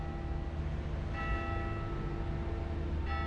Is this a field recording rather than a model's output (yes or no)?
yes